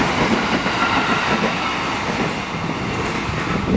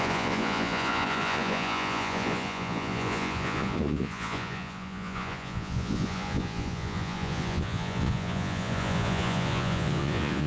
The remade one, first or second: second